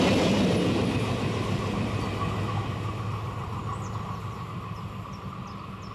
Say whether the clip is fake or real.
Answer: real